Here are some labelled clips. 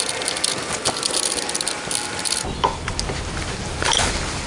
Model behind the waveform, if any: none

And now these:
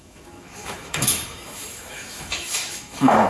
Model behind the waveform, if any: autoencoder, DAC-VAE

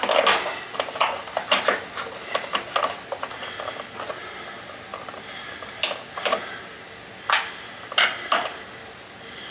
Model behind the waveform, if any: none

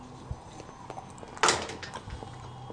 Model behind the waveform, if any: none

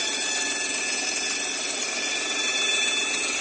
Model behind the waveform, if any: none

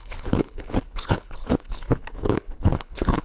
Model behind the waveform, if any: codec, HILCodec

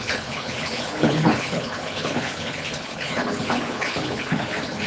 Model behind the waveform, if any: codec, HILCodec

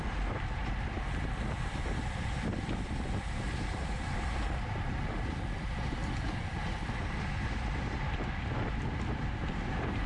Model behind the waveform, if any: vocoder, BigVGAN v2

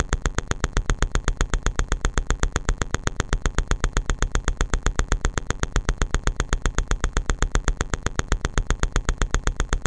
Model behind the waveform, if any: vocoder, BigVGAN v2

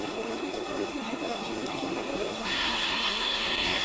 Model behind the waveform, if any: codec, SNAC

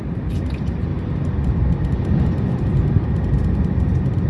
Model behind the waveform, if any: none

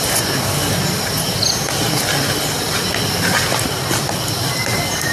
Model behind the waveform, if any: none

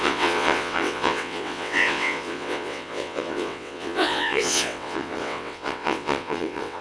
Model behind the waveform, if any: vocoder, WaveNeXt